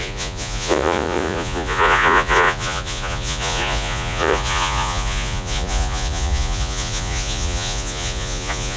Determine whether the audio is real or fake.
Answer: fake